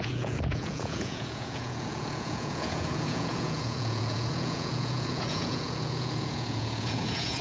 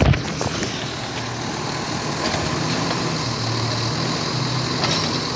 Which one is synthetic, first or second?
first